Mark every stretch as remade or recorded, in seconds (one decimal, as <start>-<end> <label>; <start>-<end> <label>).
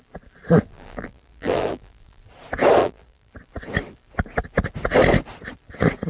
0.0-0.7 recorded; 0.7-2.2 remade; 2.2-2.8 recorded; 2.8-3.3 remade; 3.3-6.1 recorded